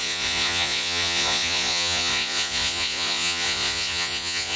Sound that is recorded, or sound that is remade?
remade